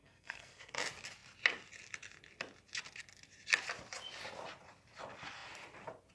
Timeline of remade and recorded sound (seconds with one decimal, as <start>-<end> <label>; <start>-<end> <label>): 0.0-0.7 remade; 0.7-6.1 recorded